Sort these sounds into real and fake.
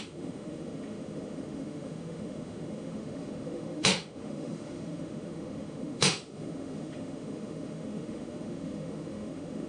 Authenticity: fake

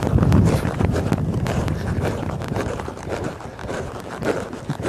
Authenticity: fake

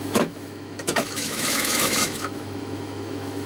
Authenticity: fake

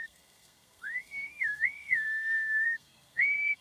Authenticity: fake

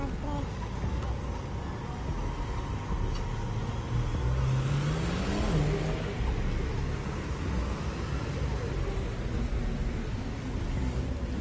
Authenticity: real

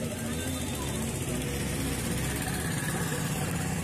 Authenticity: real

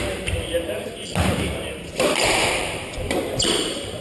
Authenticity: fake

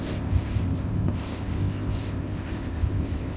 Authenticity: fake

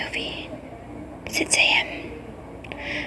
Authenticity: real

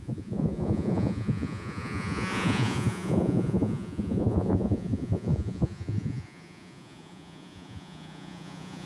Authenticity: fake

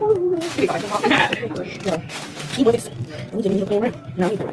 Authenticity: fake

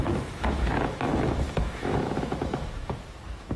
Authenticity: fake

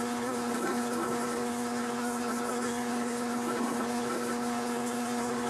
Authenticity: fake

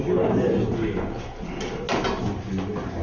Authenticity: real